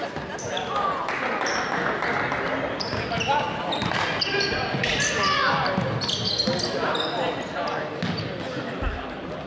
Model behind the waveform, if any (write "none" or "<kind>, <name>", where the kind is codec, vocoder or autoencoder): none